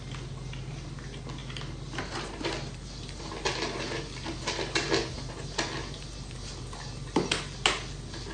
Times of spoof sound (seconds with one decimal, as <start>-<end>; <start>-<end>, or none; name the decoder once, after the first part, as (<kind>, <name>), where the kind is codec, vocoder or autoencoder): none